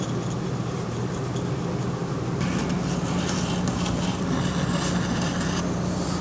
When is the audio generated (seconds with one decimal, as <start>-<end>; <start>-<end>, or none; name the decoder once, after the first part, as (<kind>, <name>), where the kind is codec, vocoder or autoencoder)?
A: none